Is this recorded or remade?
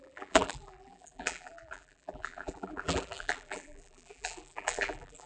remade